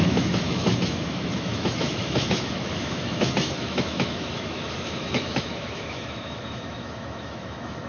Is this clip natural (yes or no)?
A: no